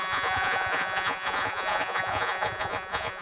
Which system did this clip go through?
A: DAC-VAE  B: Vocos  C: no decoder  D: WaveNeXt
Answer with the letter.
B